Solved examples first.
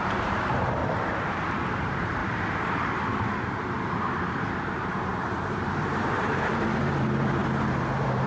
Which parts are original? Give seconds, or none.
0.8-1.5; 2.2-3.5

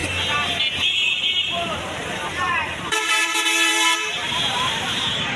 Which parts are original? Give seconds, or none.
3.2-3.7

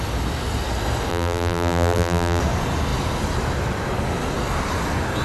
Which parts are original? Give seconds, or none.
0.0-1.1; 2.4-5.2

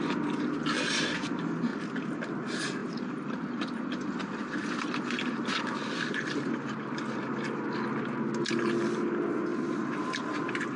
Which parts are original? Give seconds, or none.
0.0-2.8; 6.3-9.5; 10.4-10.8

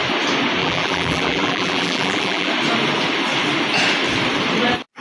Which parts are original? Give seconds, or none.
0.0-0.6; 2.5-5.0